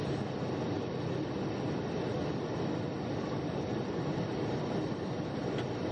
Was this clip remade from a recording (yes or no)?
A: no